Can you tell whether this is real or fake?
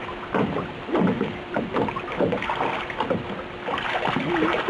real